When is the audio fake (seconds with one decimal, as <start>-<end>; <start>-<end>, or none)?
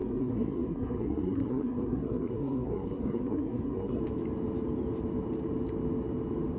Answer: 0.0-4.0